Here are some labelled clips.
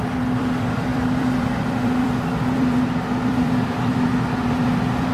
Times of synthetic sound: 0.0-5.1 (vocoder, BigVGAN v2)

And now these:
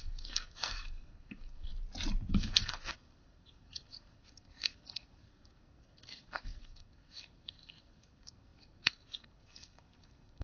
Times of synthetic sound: 0.0-1.7 (codec, SNAC); 2.3-10.4

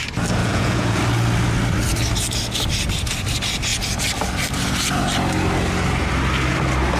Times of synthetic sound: 0.4-1.0 (vocoder, Vocos)

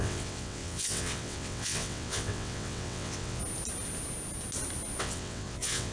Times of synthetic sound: 0.0-3.4 (vocoder, WaveNeXt); 5.0-5.9